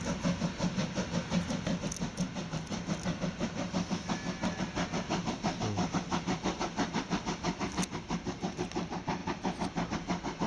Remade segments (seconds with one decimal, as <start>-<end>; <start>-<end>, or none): none